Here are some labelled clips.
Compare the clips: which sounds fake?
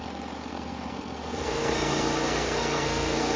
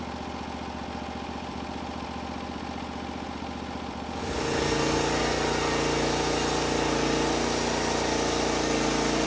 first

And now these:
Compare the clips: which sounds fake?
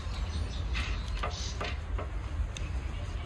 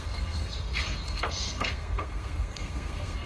second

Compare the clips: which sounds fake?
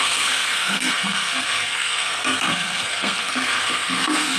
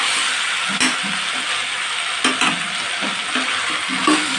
first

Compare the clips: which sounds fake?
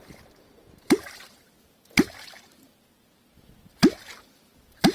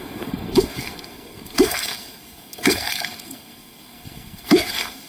second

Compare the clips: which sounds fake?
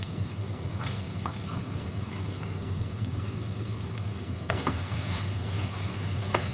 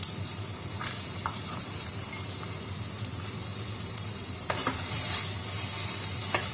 first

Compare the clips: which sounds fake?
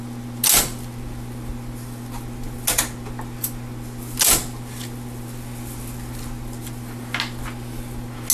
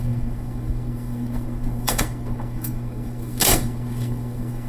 second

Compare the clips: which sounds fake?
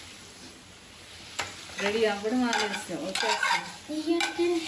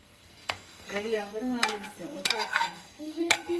second